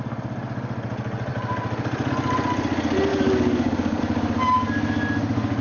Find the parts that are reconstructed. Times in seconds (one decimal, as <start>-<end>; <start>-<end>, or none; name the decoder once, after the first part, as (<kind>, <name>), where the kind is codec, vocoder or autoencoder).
3.1-4.0 (codec, DAC)